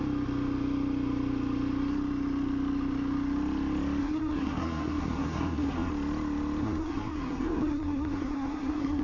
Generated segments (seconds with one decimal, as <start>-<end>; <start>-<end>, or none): 4.0-5.9; 6.6-9.0